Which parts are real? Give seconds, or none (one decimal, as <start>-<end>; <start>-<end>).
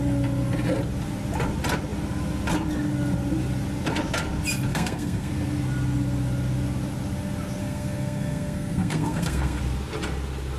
0.0-4.7; 5.3-7.6; 9.6-10.6